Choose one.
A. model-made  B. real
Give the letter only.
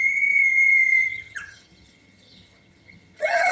A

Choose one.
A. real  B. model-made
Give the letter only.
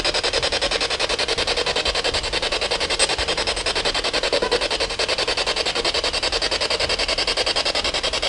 A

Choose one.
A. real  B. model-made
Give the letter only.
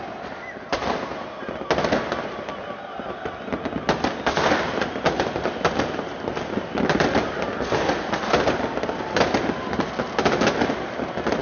A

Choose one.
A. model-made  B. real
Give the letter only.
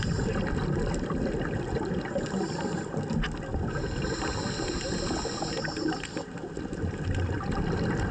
B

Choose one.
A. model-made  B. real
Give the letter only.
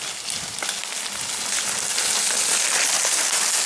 B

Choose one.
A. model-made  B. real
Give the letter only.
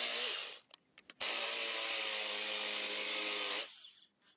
A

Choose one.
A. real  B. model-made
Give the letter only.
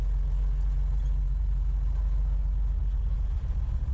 A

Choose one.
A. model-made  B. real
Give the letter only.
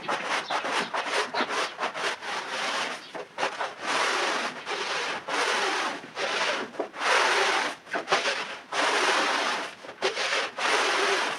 A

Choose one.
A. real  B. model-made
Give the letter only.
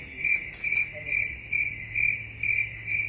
A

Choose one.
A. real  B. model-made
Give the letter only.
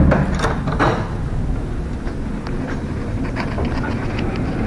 A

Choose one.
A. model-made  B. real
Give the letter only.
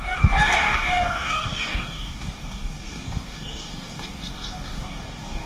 A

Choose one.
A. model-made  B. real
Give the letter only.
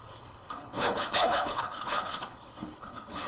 A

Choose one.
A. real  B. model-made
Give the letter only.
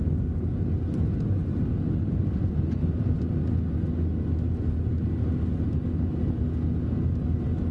A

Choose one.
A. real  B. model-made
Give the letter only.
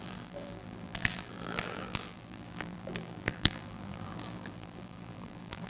B